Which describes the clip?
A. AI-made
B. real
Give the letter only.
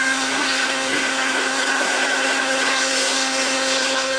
A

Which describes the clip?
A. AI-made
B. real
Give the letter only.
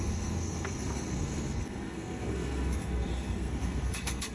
A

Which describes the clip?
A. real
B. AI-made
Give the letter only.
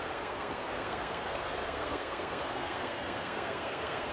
B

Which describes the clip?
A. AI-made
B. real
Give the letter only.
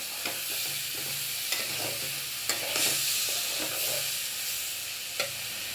B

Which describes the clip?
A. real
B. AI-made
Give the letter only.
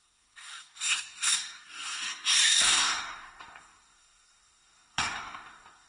B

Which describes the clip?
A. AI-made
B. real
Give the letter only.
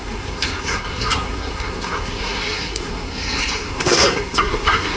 A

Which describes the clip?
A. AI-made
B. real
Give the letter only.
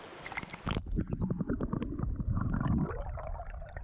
B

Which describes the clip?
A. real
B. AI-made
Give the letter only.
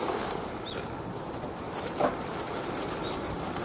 A